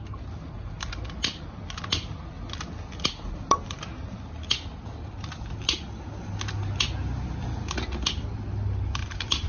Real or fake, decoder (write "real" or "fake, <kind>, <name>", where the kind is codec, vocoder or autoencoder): real